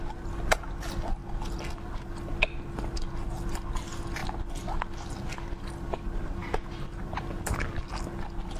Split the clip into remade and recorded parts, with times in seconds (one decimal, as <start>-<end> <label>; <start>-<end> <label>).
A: 0.0-8.6 recorded